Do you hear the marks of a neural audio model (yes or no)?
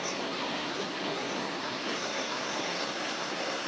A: yes